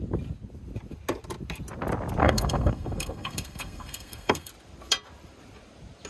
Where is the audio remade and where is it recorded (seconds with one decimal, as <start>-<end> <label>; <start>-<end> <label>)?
0.0-2.2 recorded; 2.2-4.5 remade; 4.5-6.1 recorded